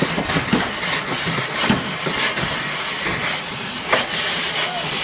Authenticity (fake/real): real